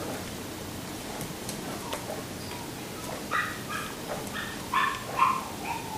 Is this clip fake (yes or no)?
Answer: no